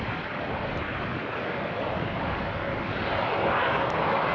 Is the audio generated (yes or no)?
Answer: yes